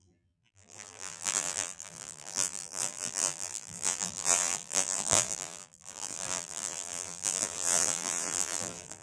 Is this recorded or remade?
remade